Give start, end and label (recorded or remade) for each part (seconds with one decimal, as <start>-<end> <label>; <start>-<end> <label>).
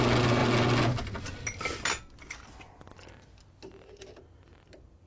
0.0-5.1 recorded